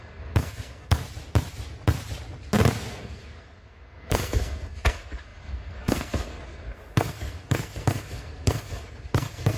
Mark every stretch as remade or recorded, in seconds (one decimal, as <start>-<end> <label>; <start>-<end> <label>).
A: 0.0-1.0 remade; 1.0-2.9 recorded; 2.9-9.6 remade